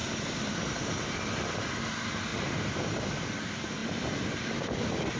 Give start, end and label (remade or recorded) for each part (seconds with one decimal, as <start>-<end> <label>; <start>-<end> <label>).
0.0-1.1 remade; 1.1-2.3 recorded; 2.3-3.0 remade; 3.0-3.8 recorded; 3.8-4.4 remade; 4.4-5.2 recorded